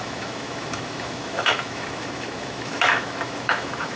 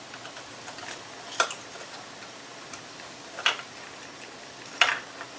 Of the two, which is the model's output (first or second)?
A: first